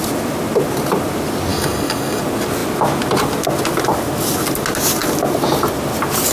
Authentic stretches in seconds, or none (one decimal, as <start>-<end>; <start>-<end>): 0.0-1.5; 2.2-6.3